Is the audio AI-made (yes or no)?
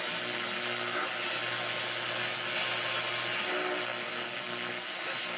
no